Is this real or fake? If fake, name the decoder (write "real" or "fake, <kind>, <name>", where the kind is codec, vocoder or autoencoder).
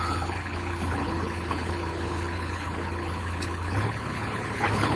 fake, codec, HILCodec